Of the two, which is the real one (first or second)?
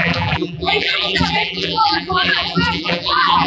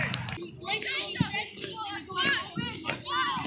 second